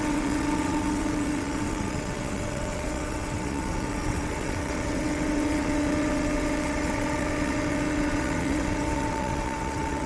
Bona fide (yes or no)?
no